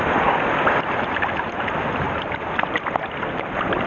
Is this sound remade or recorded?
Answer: recorded